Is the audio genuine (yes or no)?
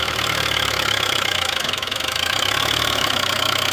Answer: no